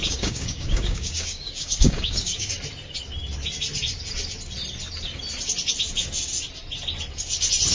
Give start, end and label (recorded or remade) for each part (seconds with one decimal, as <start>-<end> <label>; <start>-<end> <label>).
0.0-2.5 remade; 2.5-7.7 recorded